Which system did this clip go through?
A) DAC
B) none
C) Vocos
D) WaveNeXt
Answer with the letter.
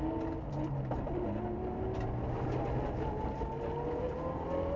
B